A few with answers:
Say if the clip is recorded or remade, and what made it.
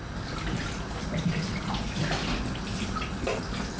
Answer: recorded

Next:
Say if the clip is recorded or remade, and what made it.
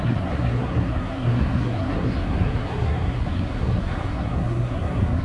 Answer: remade, codec, SNAC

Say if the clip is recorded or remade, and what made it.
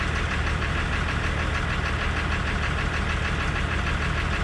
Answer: recorded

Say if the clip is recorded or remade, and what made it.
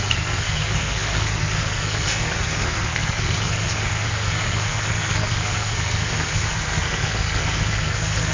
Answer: remade, codec, SNAC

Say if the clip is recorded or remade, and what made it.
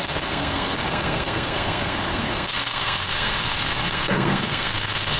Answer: remade, codec, SNAC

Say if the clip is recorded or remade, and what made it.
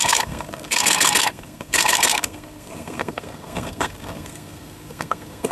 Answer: remade, codec, SNAC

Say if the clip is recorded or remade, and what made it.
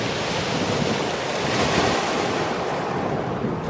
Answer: recorded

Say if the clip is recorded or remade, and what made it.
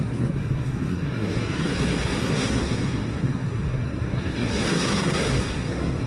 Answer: remade, codec, SNAC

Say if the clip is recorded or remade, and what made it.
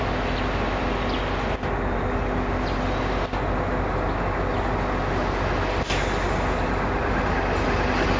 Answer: recorded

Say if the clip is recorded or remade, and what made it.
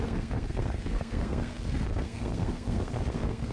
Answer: remade, codec, SNAC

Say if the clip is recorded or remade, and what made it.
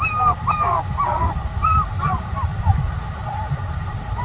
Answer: recorded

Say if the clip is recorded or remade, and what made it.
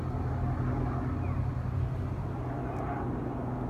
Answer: recorded